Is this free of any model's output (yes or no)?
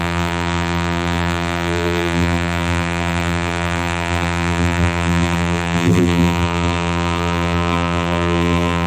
no